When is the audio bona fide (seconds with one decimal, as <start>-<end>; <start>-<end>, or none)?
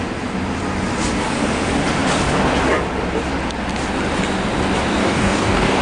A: 0.0-5.0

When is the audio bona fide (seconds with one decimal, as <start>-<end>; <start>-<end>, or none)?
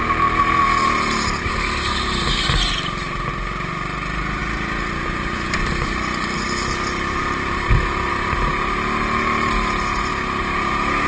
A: 0.0-4.4; 8.1-11.1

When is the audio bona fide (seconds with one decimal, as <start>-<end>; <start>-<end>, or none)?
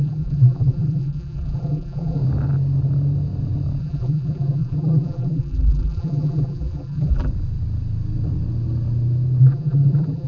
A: 2.2-3.8; 7.3-9.4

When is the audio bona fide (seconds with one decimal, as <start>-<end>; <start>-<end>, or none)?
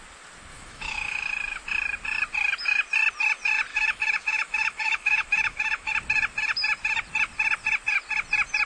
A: 0.0-0.5; 1.2-3.7; 5.9-8.7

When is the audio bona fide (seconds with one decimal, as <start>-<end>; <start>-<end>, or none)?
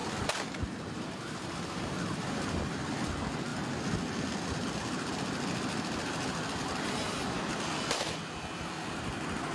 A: 0.0-0.6; 3.5-4.3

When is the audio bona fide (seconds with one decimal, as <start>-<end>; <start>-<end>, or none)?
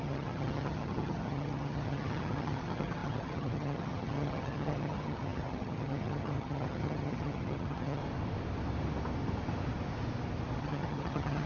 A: 8.0-10.6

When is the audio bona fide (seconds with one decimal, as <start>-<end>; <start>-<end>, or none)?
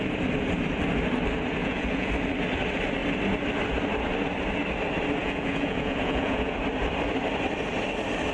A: 0.0-1.6; 2.1-5.2; 6.6-8.3